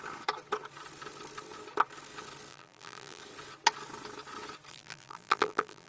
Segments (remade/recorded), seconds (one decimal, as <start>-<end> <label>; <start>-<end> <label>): 0.0-2.5 recorded; 2.5-3.2 remade; 3.2-4.7 recorded; 4.7-5.9 remade